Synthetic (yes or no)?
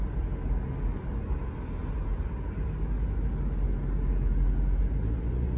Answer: no